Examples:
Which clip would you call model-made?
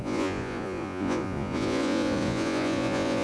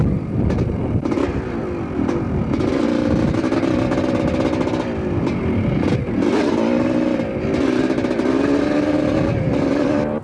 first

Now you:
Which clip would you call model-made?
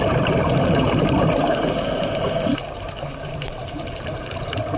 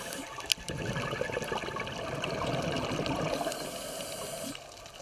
first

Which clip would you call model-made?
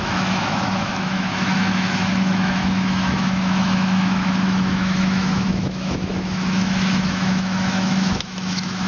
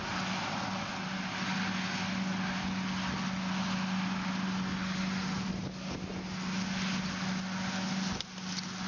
first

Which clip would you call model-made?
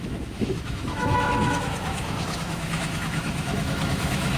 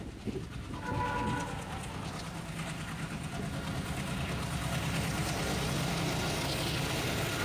first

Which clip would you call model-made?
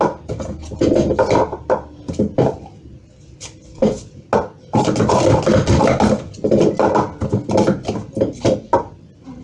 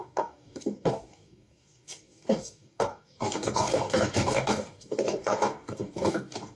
second